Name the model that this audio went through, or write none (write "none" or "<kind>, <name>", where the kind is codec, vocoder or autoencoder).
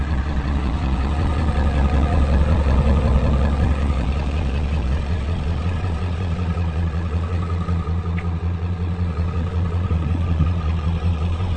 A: vocoder, Vocos